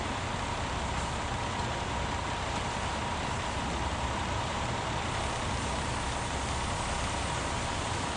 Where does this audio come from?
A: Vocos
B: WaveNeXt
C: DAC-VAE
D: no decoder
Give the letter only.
D